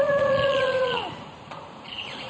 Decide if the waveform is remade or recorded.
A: remade